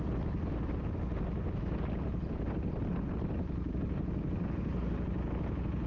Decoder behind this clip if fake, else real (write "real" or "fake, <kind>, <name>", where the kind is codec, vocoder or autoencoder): real